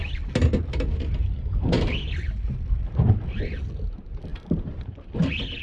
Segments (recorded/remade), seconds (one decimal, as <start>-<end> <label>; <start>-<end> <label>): 0.0-5.6 recorded